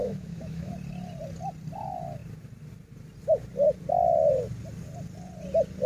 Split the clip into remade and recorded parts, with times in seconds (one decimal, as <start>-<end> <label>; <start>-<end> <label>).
0.0-0.7 remade; 0.7-5.9 recorded